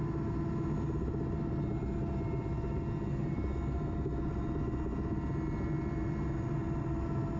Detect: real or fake real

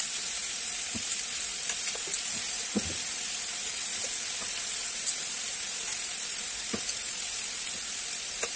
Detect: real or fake real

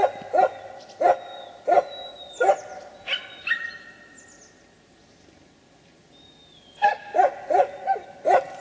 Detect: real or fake real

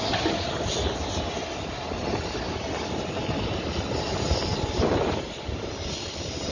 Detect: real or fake real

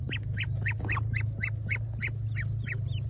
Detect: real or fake real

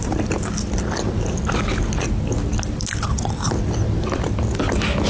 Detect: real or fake real